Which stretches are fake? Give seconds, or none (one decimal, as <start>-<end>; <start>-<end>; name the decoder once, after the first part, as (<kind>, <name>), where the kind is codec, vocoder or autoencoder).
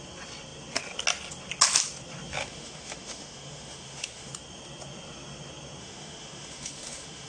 2.4-4.3 (autoencoder, DAC-VAE); 5.8-7.3